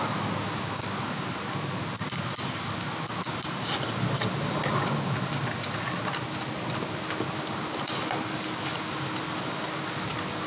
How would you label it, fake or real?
real